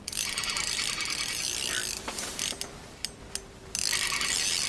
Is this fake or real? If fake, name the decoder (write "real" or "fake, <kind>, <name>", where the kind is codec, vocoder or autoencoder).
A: real